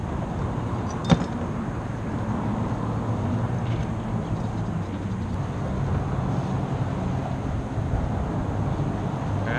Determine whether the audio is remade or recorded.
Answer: recorded